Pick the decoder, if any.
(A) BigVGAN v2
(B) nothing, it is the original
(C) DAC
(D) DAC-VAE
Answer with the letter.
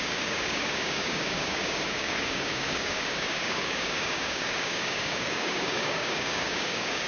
C